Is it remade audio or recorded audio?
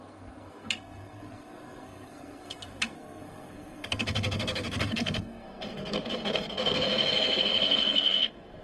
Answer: remade